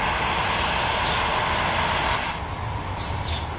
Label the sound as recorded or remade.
remade